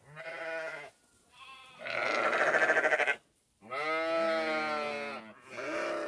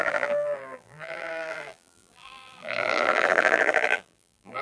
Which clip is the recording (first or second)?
first